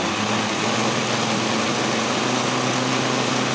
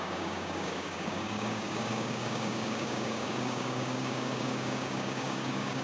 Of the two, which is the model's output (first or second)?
second